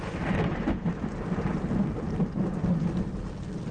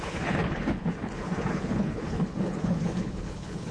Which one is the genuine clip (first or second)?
first